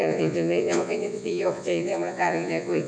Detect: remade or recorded remade